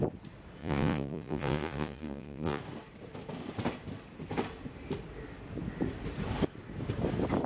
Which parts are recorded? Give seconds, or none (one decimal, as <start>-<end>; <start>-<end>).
0.0-0.6; 2.6-7.5